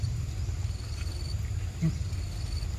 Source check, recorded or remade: recorded